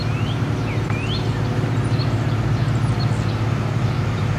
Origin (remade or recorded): recorded